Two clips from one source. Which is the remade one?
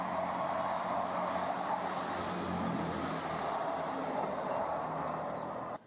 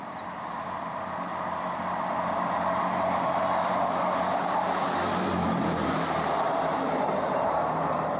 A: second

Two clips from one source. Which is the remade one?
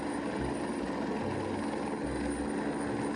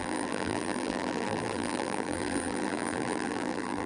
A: second